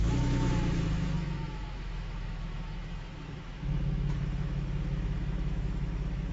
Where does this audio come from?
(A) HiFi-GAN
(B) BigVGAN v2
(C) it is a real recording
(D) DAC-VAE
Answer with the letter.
D